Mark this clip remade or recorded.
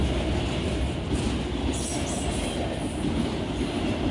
recorded